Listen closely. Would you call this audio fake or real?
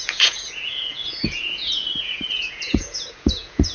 fake